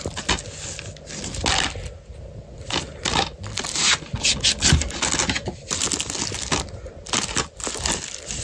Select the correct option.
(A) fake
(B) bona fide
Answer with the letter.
B